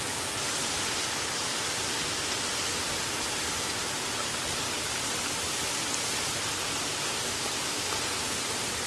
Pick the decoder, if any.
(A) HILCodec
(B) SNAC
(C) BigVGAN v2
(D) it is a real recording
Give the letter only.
D